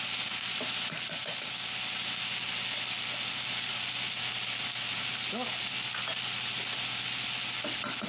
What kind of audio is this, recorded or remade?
recorded